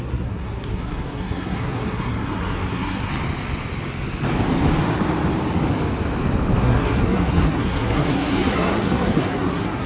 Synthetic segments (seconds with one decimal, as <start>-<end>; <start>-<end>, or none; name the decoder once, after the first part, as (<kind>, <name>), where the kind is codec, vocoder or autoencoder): 0.0-3.1 (codec, SNAC); 6.6-9.9